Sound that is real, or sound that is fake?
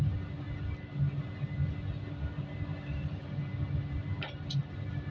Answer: real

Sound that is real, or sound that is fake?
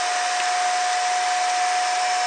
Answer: real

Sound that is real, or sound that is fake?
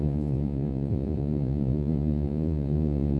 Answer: fake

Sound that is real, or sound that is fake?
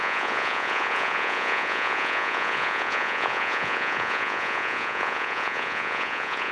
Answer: fake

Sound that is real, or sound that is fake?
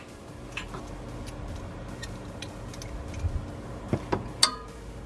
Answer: real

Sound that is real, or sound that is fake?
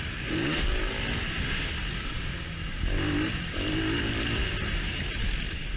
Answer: real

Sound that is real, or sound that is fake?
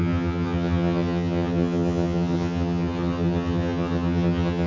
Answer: fake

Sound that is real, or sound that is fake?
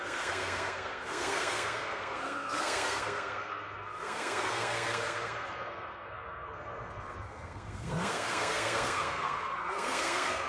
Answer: fake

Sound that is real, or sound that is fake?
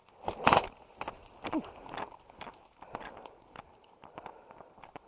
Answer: real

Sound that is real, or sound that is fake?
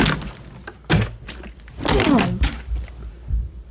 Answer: real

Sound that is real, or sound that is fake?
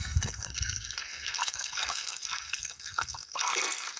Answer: fake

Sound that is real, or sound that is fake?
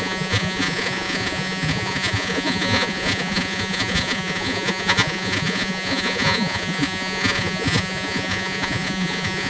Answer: fake